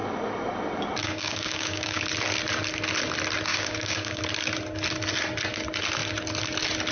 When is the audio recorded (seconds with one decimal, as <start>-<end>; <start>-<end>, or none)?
0.0-1.0; 2.0-3.5; 4.2-6.9

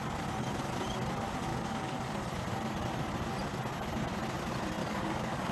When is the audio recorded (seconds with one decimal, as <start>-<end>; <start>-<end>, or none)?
0.0-1.5; 2.1-4.8

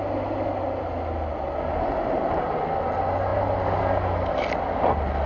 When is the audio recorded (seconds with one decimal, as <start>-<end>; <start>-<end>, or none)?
0.0-5.3